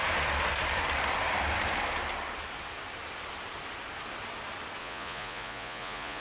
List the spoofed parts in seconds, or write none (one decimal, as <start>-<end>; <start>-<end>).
4.8-6.2